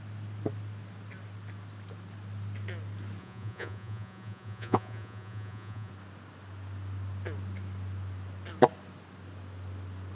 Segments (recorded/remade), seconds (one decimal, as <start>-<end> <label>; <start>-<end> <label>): 0.0-3.2 recorded; 3.2-5.9 remade; 5.9-10.1 recorded